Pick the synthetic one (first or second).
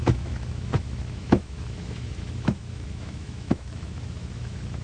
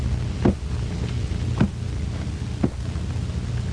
first